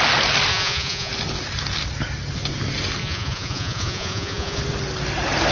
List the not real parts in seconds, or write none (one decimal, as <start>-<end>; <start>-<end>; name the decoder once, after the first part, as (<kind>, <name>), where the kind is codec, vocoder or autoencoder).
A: 0.5-1.1 (vocoder, Vocos); 3.0-4.6